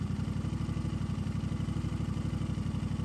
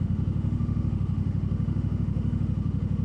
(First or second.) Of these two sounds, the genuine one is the first